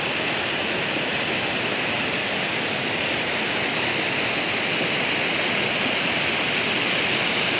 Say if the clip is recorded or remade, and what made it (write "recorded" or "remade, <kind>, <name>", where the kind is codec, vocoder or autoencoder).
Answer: recorded